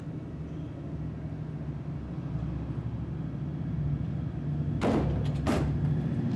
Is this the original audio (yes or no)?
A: yes